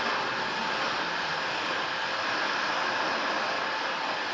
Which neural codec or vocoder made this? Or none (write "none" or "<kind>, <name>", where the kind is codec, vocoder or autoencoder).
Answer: none